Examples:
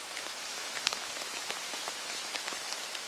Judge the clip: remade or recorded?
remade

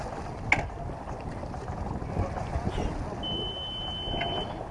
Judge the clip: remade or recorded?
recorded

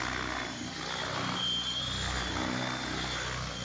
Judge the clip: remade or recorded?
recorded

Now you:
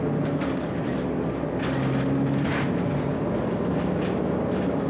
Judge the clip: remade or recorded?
recorded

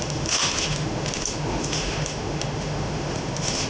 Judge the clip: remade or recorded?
remade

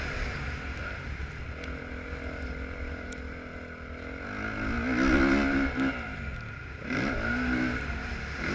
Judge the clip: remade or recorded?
recorded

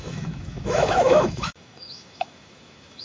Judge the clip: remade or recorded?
remade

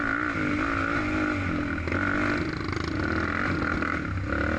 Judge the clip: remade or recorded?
recorded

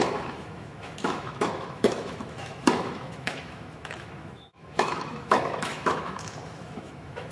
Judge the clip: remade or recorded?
remade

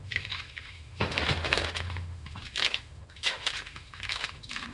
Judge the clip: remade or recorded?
remade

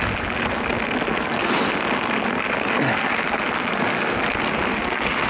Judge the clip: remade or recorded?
recorded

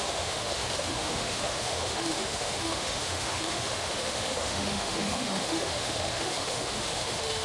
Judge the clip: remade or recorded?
remade